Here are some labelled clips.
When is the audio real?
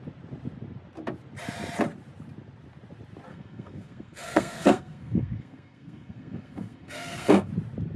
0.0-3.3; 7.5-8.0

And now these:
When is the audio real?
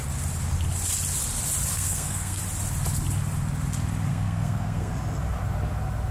0.0-1.7; 2.4-4.1; 4.9-6.1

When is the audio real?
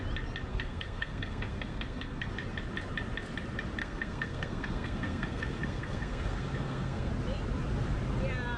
0.0-0.5; 2.3-3.8; 7.1-8.6